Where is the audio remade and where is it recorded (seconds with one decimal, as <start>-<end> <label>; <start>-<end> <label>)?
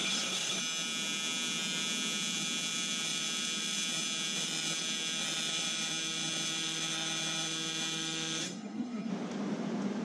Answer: 0.0-0.6 remade; 0.6-8.4 recorded; 8.4-9.1 remade; 9.1-10.0 recorded